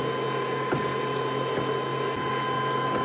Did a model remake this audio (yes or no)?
no